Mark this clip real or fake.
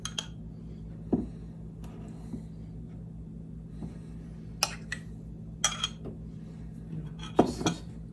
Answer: real